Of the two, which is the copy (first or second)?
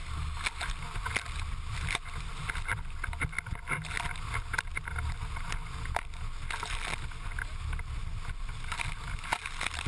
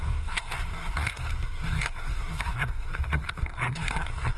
second